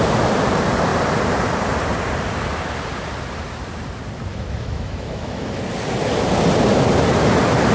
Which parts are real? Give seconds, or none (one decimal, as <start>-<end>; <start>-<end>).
0.0-4.3; 5.6-7.7